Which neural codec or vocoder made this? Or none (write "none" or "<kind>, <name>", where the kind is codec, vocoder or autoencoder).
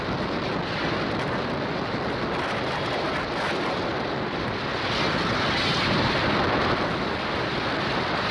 none